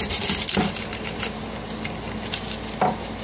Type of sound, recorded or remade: recorded